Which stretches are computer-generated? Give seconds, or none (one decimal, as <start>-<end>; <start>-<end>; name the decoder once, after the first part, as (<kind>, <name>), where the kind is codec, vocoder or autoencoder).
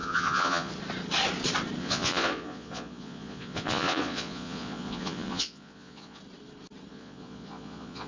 0.0-0.7 (vocoder, Vocos); 1.8-6.2; 6.9-8.1